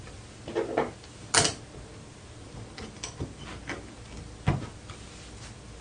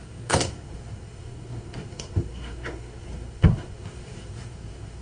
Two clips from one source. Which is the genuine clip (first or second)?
first